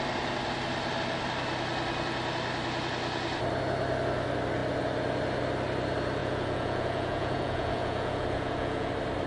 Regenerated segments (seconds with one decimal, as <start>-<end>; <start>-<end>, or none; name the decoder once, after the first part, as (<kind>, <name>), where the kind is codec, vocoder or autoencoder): 6.2-8.9 (vocoder, Vocos)